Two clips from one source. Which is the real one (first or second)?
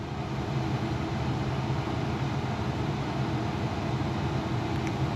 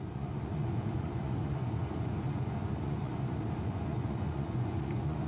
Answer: first